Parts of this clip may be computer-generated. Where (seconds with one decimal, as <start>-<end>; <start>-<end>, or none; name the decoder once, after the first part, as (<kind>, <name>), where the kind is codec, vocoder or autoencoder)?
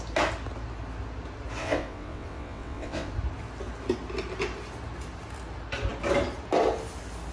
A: 1.6-3.1 (vocoder, WaveNeXt)